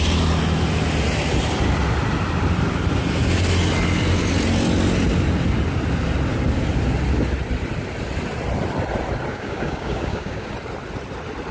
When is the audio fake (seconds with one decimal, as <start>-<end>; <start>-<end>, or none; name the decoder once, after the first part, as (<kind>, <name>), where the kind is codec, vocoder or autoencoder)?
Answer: 9.3-10.5 (codec, DAC)